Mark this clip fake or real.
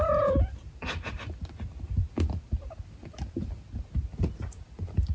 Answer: real